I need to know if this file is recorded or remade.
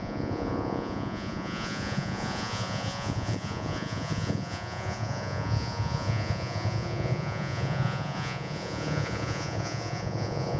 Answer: remade